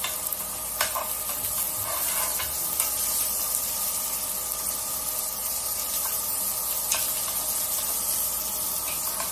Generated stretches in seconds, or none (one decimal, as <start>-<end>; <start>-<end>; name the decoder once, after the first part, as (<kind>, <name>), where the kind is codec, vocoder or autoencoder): 5.4-6.4 (vocoder, BigVGAN v2)

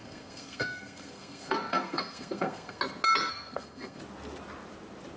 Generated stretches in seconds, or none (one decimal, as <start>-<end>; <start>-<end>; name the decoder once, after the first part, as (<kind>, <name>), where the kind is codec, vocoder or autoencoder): 0.0-2.8 (codec, SNAC); 3.3-4.0

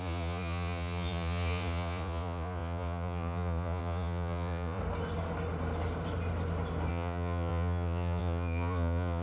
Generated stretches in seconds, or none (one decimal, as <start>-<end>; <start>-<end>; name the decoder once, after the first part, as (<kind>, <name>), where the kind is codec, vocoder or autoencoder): 0.0-4.8 (vocoder, Vocos); 6.9-9.2